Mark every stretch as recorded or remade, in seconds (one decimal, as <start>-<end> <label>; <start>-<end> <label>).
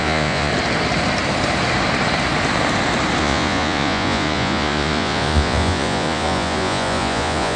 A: 0.0-0.5 remade; 0.5-3.2 recorded; 3.2-7.6 remade